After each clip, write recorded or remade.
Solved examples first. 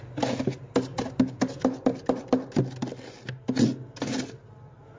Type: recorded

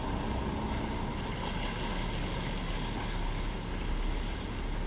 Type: recorded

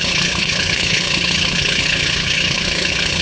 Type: remade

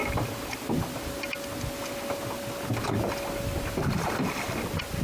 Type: recorded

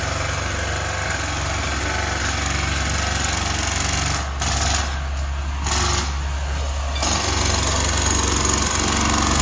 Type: recorded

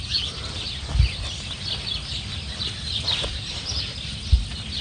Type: recorded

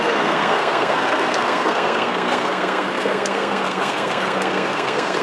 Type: remade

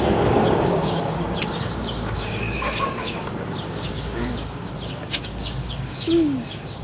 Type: remade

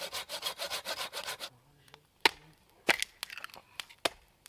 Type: recorded